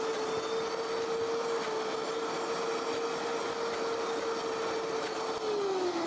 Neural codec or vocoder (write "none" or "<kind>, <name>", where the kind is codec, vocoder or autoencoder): none